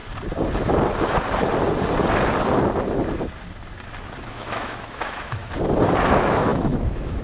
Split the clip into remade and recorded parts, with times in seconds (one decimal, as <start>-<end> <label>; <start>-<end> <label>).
0.0-4.3 recorded; 4.3-5.4 remade; 5.4-6.1 recorded; 6.1-7.2 remade